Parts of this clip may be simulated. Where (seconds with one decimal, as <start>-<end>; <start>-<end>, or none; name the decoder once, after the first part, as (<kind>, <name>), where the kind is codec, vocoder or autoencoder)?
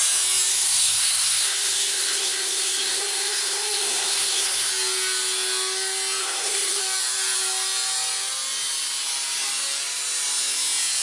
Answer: 0.5-4.7 (codec, SNAC); 6.2-6.8